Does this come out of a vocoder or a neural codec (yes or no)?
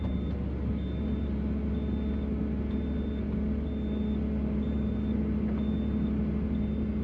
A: no